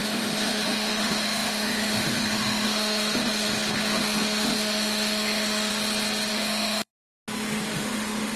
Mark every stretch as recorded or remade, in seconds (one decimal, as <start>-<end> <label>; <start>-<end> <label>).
0.0-5.7 remade; 5.7-6.3 recorded; 6.3-6.9 remade; 6.9-7.7 recorded; 7.7-8.4 remade

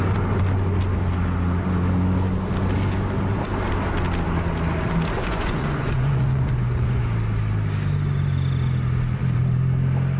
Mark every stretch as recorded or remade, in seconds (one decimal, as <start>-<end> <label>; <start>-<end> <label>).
0.0-5.2 recorded; 5.2-7.0 remade; 7.0-10.2 recorded

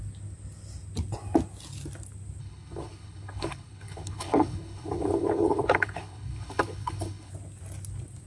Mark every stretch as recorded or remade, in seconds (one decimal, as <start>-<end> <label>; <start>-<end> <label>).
0.0-2.4 recorded; 2.4-7.3 remade; 7.3-8.3 recorded

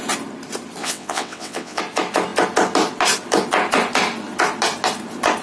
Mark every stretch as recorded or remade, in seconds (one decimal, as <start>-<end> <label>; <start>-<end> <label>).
0.0-0.8 recorded; 0.8-1.8 remade; 1.8-5.4 recorded

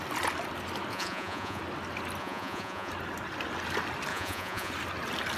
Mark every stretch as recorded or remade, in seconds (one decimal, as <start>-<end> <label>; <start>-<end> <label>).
0.0-0.9 recorded; 0.9-1.6 remade; 1.6-2.2 recorded; 2.2-2.9 remade; 2.9-4.1 recorded; 4.1-4.7 remade; 4.7-5.4 recorded

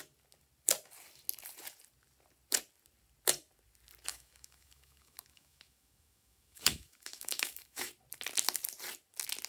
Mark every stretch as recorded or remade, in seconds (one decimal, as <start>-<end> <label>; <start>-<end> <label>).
0.0-4.1 recorded; 4.1-7.9 remade; 7.9-9.5 recorded

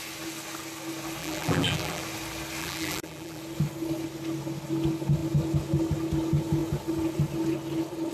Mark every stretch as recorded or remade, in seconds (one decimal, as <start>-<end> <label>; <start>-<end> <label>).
0.0-1.2 recorded; 1.2-2.0 remade; 2.0-2.6 recorded; 2.6-3.4 remade; 3.4-8.1 recorded